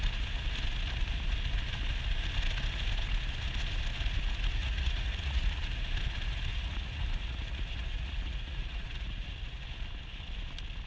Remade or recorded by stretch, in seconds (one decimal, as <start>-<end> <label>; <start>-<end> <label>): 0.0-4.6 recorded; 4.6-5.6 remade; 5.6-6.5 recorded; 6.5-9.6 remade; 9.6-10.9 recorded